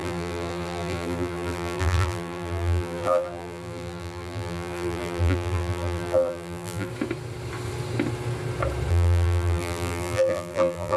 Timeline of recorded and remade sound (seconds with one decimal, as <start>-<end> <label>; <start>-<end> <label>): 0.0-6.9 remade; 6.9-8.9 recorded; 8.9-11.0 remade